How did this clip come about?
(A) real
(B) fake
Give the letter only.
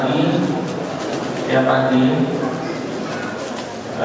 A